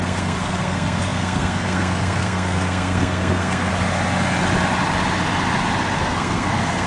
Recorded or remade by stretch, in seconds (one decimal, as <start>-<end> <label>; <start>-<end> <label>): 0.0-3.7 remade; 3.7-6.0 recorded; 6.0-6.9 remade